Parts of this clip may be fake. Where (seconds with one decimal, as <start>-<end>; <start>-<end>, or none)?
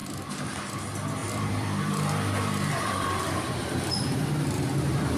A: 1.2-4.3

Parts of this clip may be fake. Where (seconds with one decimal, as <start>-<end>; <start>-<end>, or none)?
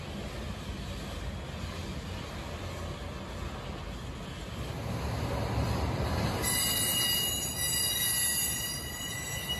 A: none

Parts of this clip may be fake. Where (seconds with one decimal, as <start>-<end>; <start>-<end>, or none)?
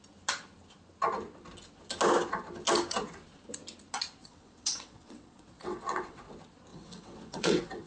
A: 4.2-6.2; 6.7-7.9